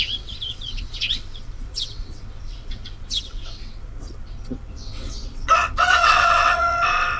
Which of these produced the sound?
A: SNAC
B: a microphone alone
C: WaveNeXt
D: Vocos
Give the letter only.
C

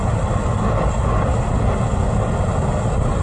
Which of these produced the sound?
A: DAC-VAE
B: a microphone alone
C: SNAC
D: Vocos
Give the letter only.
B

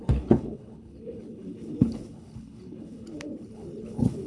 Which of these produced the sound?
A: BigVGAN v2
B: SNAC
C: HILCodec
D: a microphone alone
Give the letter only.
C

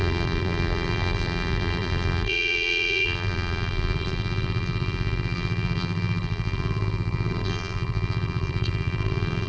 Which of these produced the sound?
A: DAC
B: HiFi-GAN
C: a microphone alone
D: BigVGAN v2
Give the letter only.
D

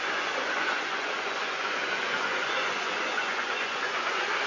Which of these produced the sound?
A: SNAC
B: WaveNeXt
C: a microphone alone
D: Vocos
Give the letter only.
D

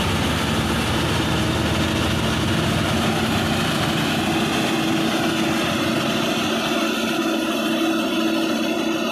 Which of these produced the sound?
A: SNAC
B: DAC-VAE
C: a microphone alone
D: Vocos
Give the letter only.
C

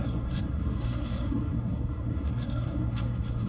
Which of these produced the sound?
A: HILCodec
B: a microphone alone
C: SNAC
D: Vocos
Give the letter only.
C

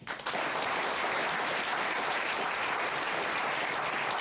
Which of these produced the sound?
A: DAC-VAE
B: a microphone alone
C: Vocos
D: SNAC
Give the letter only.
B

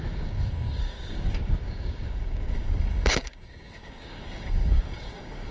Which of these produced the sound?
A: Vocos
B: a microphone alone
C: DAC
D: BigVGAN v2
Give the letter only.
C